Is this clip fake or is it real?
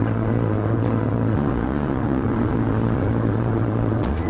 fake